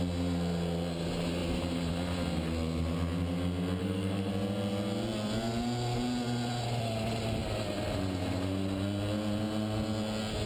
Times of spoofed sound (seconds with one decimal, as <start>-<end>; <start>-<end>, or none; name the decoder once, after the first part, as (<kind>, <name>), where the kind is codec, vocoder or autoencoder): 3.8-4.3 (codec, SNAC)